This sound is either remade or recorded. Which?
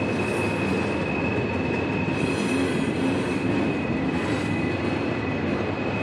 recorded